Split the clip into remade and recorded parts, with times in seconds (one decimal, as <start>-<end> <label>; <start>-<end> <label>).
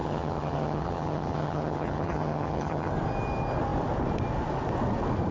0.0-2.9 remade; 2.9-5.3 recorded